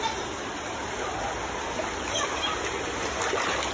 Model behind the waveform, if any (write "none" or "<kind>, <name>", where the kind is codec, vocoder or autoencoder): none